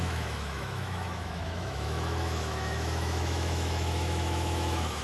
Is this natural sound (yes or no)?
no